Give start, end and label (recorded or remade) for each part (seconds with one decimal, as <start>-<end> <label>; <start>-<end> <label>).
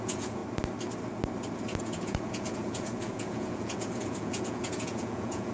0.0-0.4 remade; 0.4-1.8 recorded; 1.8-5.5 remade